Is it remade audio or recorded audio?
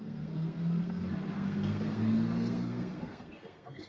remade